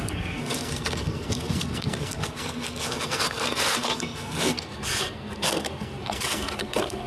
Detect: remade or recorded remade